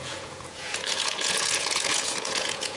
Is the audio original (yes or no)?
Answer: no